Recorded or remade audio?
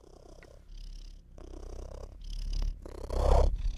recorded